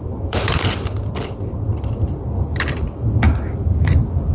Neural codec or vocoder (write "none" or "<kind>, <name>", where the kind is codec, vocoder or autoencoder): vocoder, BigVGAN v2